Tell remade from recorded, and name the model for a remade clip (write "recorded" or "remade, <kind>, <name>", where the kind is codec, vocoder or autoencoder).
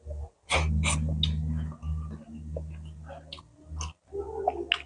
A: recorded